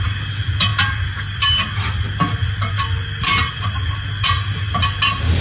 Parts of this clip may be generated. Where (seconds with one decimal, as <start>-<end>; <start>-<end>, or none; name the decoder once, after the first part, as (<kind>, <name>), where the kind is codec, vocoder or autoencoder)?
none